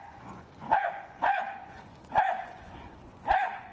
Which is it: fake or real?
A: fake